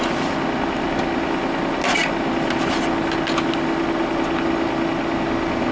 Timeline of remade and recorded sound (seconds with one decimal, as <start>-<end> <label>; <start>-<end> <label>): 0.0-5.7 recorded